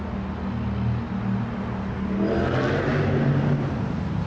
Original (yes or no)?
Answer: yes